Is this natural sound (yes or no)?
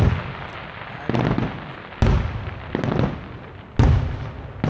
yes